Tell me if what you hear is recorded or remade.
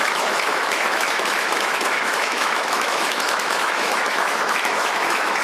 remade